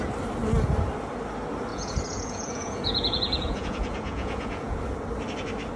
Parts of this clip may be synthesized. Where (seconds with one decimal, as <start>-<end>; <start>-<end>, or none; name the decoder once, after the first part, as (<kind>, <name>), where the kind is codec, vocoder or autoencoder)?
1.7-4.8 (vocoder, Vocos)